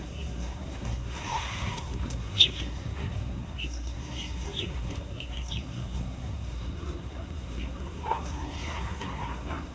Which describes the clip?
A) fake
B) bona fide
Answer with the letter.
A